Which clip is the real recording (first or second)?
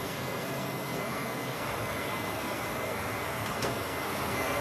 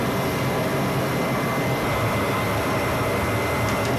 second